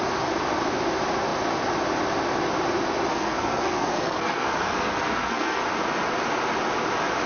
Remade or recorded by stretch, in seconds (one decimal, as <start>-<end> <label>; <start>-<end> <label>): 0.0-3.1 recorded; 3.1-5.6 remade; 5.6-7.3 recorded